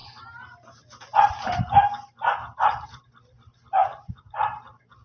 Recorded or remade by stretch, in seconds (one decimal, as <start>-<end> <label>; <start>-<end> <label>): 0.0-3.8 recorded; 3.8-4.5 remade; 4.5-5.0 recorded